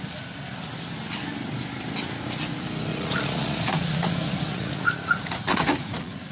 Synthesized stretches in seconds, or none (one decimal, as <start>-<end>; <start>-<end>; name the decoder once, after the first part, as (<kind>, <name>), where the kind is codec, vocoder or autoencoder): 2.9-6.3 (vocoder, Vocos)